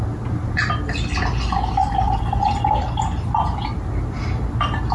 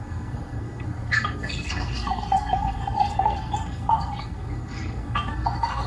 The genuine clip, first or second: first